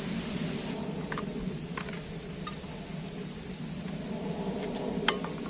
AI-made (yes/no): no